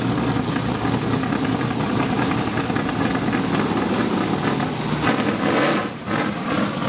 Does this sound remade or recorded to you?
recorded